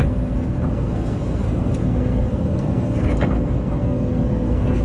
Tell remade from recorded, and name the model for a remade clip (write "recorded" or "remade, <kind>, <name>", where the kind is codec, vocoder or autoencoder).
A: remade, codec, SNAC